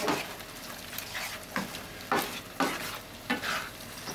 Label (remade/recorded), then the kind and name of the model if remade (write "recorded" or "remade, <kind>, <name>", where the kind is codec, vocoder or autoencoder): recorded